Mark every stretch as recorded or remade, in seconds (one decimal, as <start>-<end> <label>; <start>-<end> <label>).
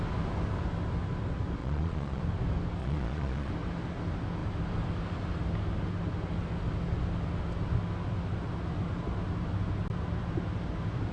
0.0-1.6 recorded; 1.6-2.2 remade; 2.2-2.8 recorded; 2.8-3.5 remade; 3.5-11.1 recorded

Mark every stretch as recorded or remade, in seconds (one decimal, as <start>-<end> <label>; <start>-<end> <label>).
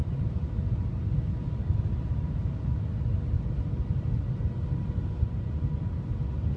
0.0-6.6 recorded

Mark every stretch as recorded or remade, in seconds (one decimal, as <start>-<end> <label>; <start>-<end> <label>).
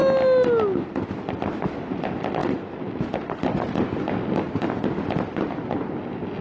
0.0-6.4 recorded